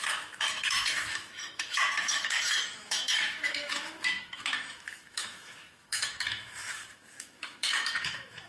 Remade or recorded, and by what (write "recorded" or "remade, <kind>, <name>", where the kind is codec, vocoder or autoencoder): remade, autoencoder, DAC-VAE